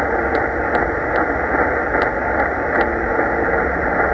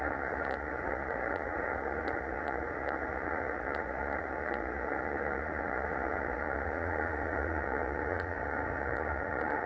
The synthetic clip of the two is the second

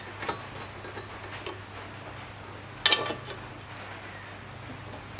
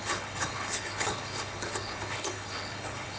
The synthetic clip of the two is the second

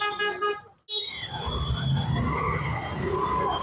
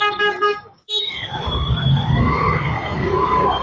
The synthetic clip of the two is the second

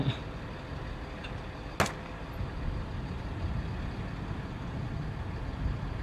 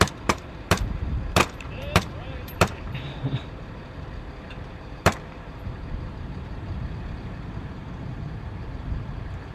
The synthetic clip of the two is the second